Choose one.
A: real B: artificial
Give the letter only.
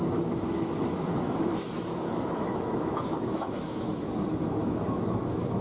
B